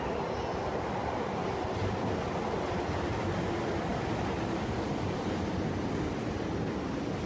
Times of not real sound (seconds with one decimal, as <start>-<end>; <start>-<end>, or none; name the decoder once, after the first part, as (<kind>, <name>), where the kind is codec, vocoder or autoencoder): none